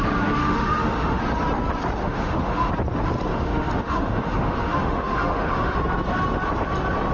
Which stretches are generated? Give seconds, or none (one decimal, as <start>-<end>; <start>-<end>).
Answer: 0.4-1.2; 2.0-2.7; 3.3-5.8